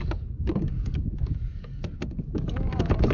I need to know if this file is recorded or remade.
remade